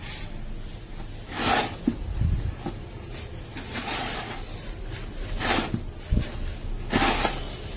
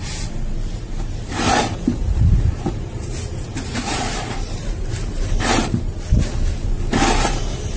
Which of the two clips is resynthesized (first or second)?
second